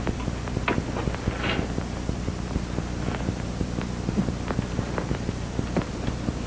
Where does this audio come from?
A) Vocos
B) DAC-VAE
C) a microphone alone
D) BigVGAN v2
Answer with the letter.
C